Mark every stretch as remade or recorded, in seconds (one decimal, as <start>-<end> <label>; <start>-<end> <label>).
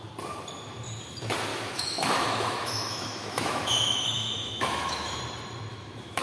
0.0-1.5 recorded; 1.5-5.2 remade; 5.2-5.7 recorded; 5.7-6.2 remade